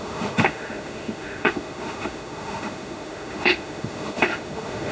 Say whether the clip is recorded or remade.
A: remade